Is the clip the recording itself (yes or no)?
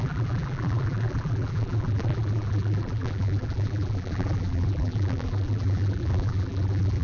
no